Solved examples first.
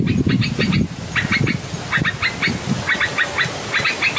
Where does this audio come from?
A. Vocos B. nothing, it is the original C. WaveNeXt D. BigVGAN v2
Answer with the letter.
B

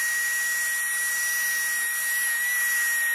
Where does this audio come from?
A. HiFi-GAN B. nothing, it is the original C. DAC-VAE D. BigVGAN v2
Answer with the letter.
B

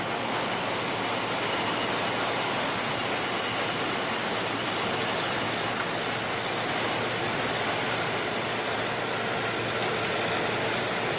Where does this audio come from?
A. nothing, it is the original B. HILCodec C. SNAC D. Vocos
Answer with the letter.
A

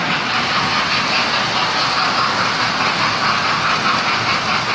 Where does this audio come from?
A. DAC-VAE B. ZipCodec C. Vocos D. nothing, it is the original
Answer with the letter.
D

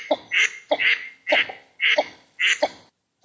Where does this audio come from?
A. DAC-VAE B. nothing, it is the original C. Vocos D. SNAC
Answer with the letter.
B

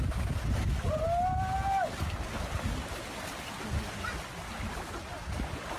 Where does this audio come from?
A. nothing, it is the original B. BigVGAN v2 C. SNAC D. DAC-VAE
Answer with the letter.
A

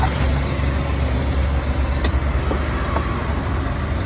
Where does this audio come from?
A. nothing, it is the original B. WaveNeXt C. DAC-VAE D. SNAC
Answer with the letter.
A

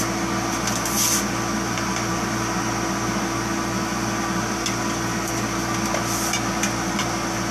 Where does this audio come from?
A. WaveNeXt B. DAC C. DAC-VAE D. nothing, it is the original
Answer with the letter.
D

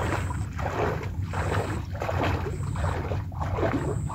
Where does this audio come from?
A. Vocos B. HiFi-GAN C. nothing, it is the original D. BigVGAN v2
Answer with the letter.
C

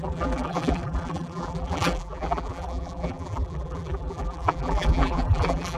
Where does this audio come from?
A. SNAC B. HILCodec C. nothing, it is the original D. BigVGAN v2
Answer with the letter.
D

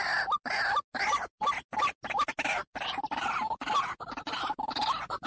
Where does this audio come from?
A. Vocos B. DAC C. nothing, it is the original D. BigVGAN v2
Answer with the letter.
C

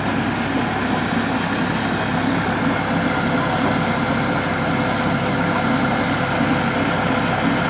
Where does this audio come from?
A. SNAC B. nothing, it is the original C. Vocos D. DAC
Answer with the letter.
B